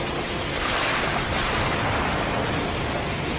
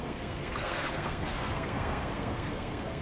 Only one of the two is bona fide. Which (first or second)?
first